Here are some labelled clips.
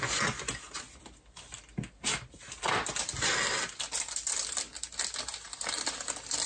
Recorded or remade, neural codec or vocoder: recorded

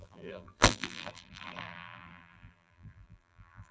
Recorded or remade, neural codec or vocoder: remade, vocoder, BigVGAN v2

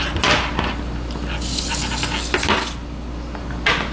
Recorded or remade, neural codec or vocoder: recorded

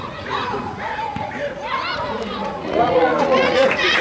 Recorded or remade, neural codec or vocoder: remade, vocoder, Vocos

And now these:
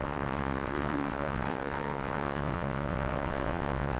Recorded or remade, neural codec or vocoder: remade, vocoder, WaveNeXt